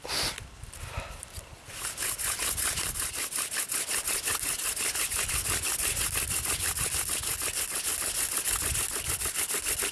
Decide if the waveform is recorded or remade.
recorded